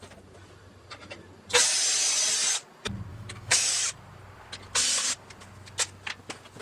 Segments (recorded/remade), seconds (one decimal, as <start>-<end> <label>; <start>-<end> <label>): 0.0-3.1 recorded; 3.1-3.7 remade; 3.7-6.6 recorded